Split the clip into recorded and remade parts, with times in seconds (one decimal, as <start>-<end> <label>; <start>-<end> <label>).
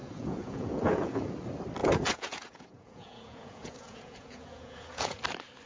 0.0-1.3 remade; 1.3-1.8 recorded; 1.8-5.2 remade; 5.2-5.7 recorded